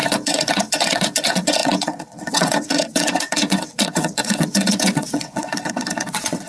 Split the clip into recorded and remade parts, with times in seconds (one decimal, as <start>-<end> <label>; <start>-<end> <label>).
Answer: 0.0-6.5 remade